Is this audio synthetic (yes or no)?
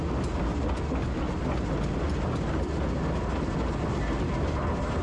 no